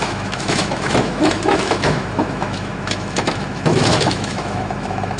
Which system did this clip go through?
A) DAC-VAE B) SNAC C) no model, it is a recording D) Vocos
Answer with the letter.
A